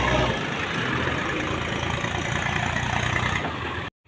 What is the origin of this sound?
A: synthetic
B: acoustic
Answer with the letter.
B